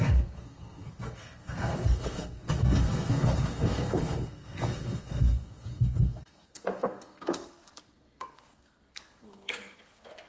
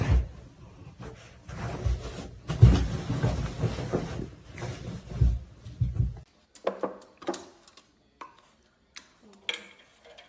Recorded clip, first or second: second